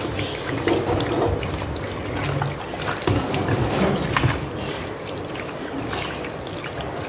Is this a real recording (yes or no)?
yes